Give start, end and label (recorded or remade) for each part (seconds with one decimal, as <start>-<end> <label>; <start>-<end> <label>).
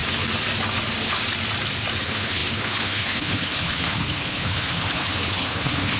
0.0-2.0 recorded; 2.0-6.0 remade